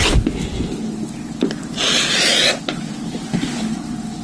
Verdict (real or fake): real